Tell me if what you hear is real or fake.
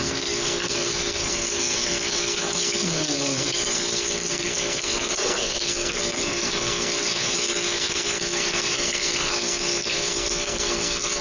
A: fake